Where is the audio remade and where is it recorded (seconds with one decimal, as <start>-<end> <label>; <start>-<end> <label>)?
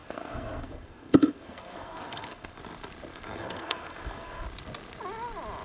0.0-2.6 remade; 2.6-3.1 recorded; 3.1-4.4 remade; 4.4-5.6 recorded